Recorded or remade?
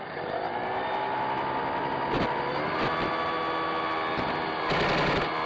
recorded